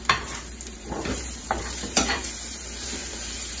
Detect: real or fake fake